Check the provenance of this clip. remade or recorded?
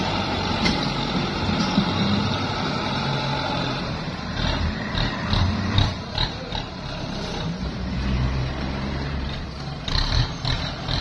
remade